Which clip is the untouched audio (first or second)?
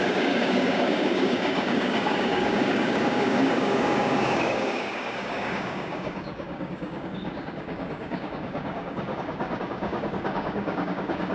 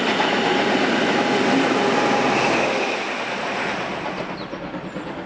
second